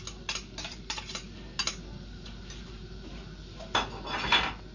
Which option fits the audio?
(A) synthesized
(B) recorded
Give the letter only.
B